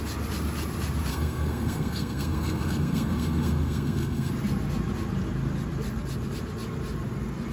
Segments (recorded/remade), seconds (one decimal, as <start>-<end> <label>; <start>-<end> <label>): 0.0-1.1 recorded; 1.1-4.3 remade; 4.3-7.5 recorded